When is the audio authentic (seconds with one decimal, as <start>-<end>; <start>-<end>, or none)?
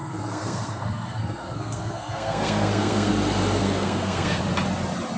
3.1-3.6; 4.4-5.2